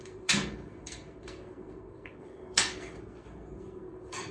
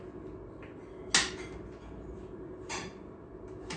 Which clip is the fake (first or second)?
first